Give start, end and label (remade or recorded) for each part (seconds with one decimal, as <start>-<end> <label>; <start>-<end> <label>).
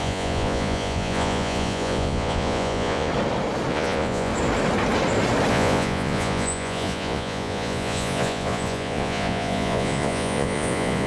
0.0-3.1 remade; 3.1-3.7 recorded; 3.7-4.3 remade; 4.3-5.5 recorded; 5.5-11.1 remade